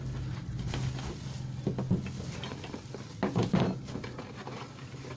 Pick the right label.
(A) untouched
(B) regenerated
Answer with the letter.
A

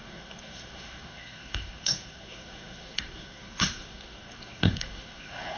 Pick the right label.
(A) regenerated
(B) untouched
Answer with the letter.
A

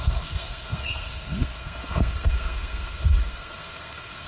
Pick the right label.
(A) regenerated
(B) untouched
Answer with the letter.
A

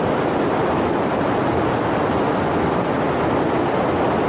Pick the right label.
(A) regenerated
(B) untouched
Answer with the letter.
B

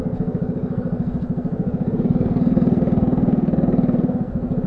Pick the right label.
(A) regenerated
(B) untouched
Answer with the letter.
A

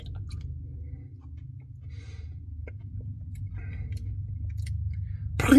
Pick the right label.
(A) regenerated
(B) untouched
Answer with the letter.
B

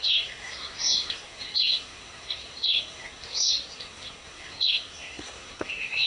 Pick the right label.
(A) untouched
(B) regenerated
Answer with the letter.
B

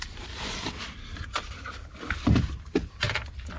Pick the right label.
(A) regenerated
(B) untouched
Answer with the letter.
B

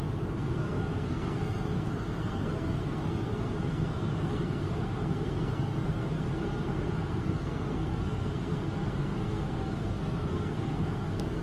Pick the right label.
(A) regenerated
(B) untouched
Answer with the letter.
A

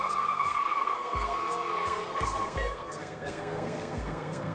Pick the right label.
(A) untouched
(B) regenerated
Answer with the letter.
B